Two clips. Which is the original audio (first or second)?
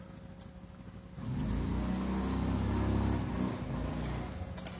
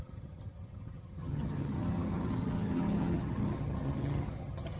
first